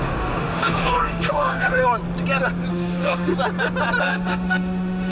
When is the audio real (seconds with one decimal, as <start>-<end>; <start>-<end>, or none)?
1.8-2.7; 3.3-4.0

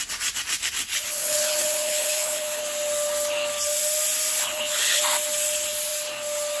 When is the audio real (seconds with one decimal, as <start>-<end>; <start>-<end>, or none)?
0.0-0.9; 2.6-4.4; 5.0-6.6

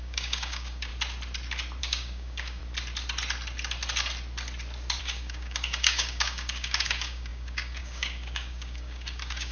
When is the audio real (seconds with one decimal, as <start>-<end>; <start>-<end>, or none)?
0.9-1.8; 2.6-5.0

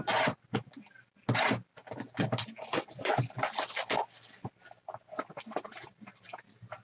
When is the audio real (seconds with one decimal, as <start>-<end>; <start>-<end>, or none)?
0.0-6.8

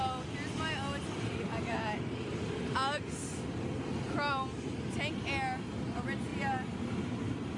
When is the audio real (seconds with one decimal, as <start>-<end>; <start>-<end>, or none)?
0.0-7.6

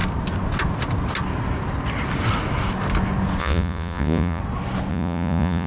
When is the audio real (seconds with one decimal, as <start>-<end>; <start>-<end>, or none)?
0.0-3.4; 4.4-4.9

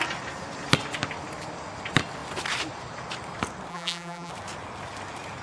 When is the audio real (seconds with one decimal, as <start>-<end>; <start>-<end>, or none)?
0.0-3.7; 4.3-5.4